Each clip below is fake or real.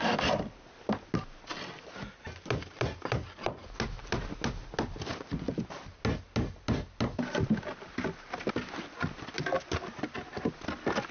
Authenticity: real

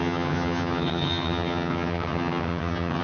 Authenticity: fake